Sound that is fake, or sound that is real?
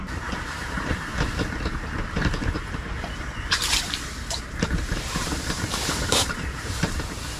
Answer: fake